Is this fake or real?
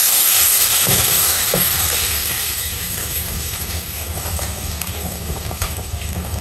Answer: fake